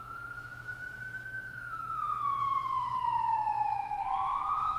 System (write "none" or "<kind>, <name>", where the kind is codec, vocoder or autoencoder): autoencoder, DAC-VAE